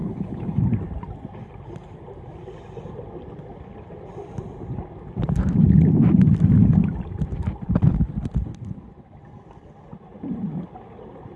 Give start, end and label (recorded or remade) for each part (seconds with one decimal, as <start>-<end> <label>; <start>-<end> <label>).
0.0-0.6 remade; 0.6-11.4 recorded